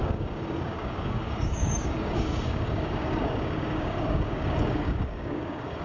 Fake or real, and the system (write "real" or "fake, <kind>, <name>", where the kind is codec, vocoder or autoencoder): fake, codec, DAC